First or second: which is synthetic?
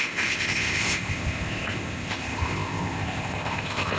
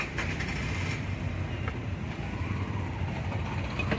first